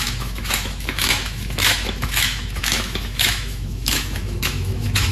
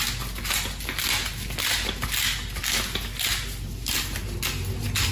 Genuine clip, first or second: second